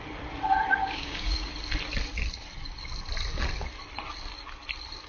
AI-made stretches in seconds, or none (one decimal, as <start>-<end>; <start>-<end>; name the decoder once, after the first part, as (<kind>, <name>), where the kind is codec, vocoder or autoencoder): 0.7-1.5 (codec, DAC)